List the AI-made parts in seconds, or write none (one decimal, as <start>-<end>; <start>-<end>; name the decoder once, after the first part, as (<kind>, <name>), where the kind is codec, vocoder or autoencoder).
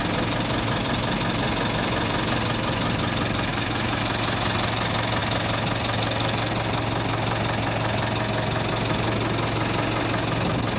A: 3.5-4.0 (autoencoder, DAC-VAE)